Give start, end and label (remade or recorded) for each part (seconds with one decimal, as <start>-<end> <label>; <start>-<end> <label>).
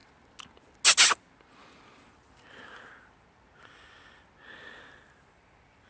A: 0.0-5.9 recorded